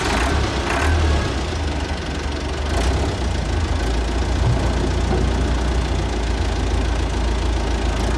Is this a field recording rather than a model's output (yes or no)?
yes